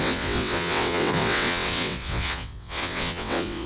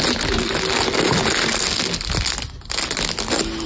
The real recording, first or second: second